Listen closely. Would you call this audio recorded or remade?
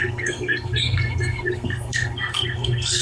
remade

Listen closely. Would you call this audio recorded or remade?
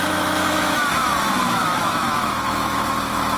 remade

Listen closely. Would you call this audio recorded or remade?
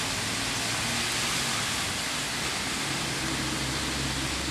recorded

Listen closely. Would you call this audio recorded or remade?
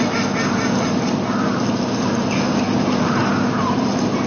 recorded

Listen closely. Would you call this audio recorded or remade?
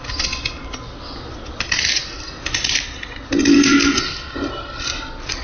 recorded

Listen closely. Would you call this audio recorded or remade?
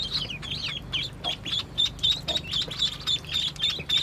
recorded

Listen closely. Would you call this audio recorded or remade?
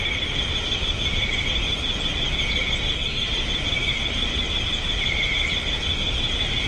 recorded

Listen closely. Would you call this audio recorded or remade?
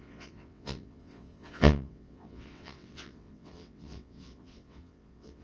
remade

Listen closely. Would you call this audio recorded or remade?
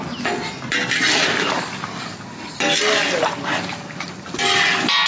recorded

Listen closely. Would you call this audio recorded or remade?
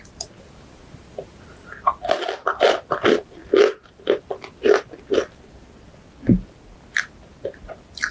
recorded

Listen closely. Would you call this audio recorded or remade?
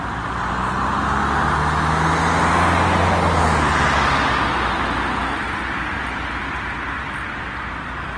recorded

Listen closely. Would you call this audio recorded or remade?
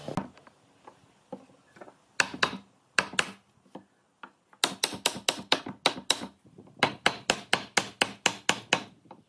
recorded